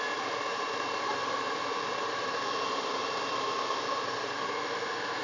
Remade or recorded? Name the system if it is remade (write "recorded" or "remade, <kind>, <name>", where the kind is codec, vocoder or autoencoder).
recorded